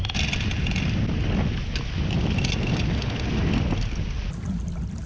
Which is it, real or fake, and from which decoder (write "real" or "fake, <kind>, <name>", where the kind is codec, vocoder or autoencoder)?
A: real